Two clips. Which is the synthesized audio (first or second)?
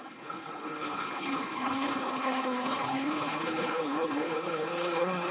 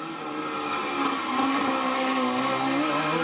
first